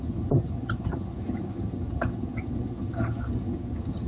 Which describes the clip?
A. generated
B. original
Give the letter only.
A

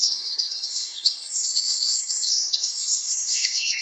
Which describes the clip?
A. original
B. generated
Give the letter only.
B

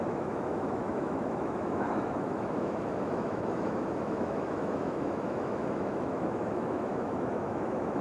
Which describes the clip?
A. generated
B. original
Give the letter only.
A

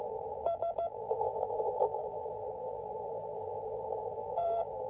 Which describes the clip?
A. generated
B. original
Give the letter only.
A